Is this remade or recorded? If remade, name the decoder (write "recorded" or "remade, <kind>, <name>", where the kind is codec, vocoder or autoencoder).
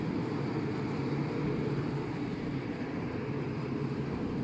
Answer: recorded